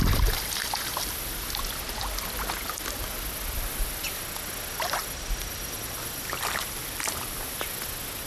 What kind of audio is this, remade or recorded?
recorded